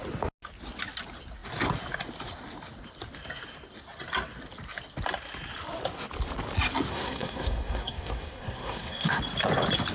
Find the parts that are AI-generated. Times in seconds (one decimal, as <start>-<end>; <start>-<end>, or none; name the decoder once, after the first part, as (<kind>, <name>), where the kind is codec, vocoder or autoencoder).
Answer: 6.9-9.2 (codec, SNAC)

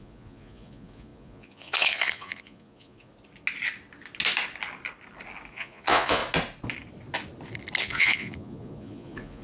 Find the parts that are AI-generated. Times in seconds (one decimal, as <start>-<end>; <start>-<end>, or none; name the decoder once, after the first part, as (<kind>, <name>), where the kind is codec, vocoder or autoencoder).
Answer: 0.0-3.1 (vocoder, Vocos); 5.5-6.2; 7.8-9.4

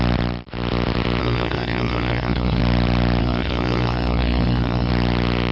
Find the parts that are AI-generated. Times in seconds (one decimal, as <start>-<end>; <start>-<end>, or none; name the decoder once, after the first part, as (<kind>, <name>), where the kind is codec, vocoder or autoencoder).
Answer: 1.2-2.6 (codec, SNAC); 3.2-4.9

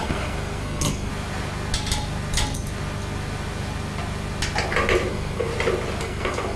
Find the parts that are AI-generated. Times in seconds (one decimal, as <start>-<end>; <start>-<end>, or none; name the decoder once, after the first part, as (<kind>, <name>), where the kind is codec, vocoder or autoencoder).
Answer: 0.0-1.1 (codec, SNAC); 5.1-5.5; 6.0-6.6

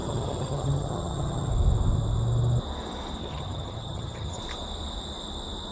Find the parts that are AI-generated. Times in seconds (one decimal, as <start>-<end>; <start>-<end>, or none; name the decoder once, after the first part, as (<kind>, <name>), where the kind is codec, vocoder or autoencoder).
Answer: 0.0-1.5 (vocoder, HiFi-GAN); 3.2-4.4

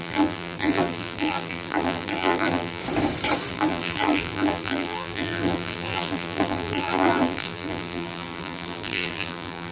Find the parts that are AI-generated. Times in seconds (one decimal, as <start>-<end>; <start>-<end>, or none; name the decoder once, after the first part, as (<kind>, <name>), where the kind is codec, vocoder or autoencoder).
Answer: 0.0-2.8 (vocoder, BigVGAN v2); 3.5-9.7

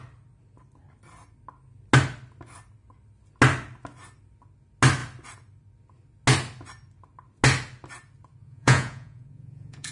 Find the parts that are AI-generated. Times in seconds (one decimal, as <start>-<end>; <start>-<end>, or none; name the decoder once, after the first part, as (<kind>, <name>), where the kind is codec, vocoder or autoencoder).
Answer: 8.4-9.9 (vocoder, Vocos)